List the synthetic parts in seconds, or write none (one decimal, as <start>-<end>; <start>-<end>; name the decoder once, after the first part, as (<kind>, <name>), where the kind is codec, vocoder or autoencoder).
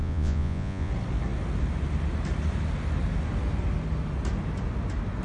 0.0-0.9 (vocoder, Vocos)